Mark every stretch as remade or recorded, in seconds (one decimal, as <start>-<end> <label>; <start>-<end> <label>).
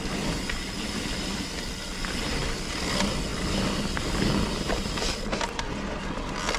0.0-6.6 recorded